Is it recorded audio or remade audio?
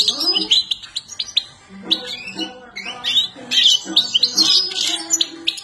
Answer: recorded